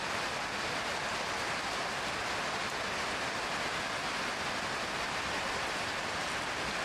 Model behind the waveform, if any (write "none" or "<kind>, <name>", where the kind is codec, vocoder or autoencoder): none